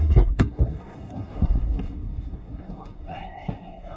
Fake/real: fake